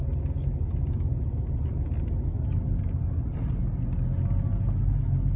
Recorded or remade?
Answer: recorded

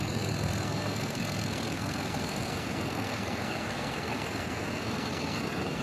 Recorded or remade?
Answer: remade